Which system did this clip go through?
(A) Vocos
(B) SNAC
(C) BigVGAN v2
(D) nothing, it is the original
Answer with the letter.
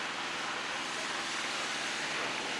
D